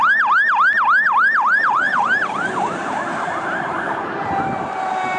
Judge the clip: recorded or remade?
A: remade